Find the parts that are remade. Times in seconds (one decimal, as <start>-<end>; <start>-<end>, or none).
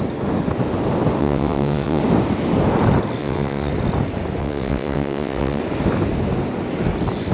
1.2-2.0; 3.2-3.7; 4.4-5.6